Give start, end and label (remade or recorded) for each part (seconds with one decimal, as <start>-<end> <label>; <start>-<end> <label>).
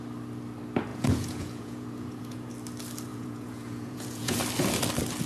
0.0-0.9 recorded; 0.9-2.5 remade; 2.5-3.1 recorded; 3.1-4.4 remade; 4.4-5.3 recorded